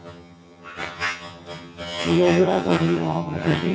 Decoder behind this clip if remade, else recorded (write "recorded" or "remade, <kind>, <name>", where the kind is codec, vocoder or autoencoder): remade, vocoder, HiFi-GAN